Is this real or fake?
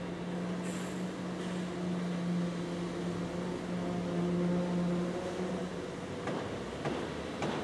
real